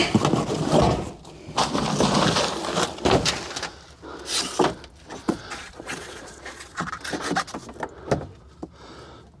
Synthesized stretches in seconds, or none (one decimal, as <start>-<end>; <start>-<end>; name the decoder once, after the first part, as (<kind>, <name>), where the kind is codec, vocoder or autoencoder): 5.2-6.9 (vocoder, Vocos)